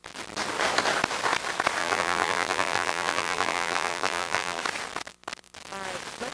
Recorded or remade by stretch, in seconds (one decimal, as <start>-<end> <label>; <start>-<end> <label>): 0.0-1.8 recorded; 1.8-4.6 remade; 4.6-6.3 recorded